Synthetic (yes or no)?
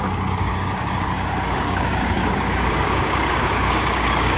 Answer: yes